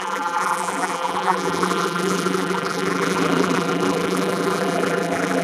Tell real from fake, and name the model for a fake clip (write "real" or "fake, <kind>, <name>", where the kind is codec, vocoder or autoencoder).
fake, vocoder, BigVGAN v2